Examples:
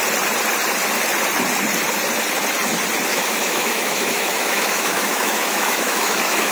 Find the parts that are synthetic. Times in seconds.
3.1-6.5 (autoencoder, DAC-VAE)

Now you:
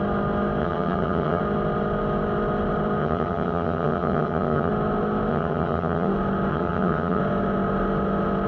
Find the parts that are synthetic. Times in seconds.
0.6-1.4 (vocoder, HiFi-GAN); 3.0-4.7; 5.3-6.1; 6.5-7.2

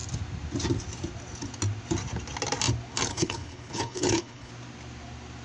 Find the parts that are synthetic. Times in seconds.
3.1-4.5 (codec, HILCodec)

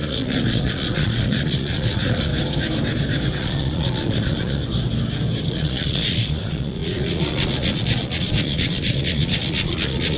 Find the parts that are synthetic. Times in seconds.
0.0-2.3 (vocoder, Vocos); 3.4-4.6; 5.5-10.2

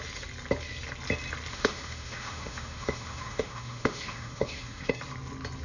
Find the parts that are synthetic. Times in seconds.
1.5-4.9 (autoencoder, DAC-VAE)

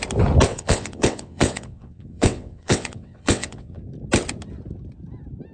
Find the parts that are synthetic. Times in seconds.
0.5-3.8 (vocoder, WaveNeXt)